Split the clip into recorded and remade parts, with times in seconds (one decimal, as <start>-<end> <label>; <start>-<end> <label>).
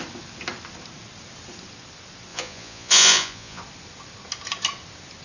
0.0-2.3 recorded; 2.3-3.6 remade; 3.6-5.2 recorded